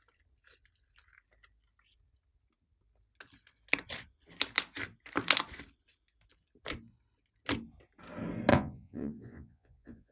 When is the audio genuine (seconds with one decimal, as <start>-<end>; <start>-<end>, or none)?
0.0-8.5